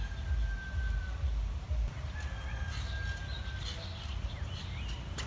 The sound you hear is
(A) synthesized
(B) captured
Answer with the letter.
B